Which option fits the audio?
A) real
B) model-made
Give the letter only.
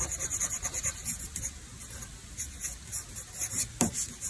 A